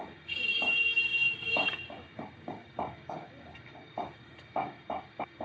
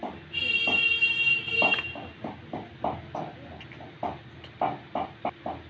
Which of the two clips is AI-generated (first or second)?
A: first